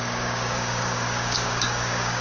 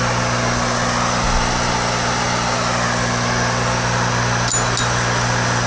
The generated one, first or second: first